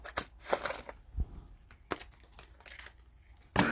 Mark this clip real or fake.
real